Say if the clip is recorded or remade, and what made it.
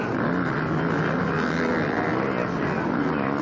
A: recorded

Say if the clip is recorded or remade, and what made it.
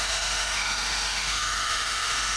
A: remade, autoencoder, DAC-VAE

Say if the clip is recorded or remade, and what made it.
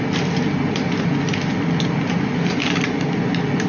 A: recorded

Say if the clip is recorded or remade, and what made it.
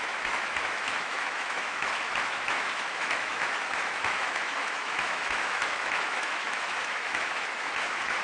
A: remade, autoencoder, DAC-VAE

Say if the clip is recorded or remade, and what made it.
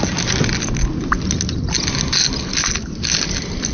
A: recorded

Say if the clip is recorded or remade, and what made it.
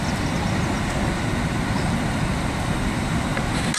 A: recorded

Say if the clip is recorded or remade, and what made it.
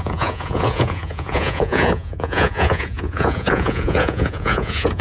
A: remade, vocoder, Vocos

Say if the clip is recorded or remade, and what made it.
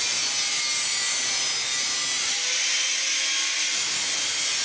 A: recorded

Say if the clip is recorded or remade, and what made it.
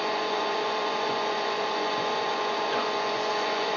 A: remade, vocoder, Vocos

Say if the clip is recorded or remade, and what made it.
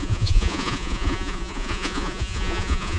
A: remade, vocoder, Vocos